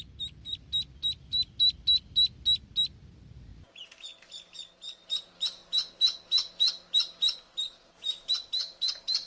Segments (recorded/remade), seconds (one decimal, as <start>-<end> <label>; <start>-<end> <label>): 0.0-9.3 recorded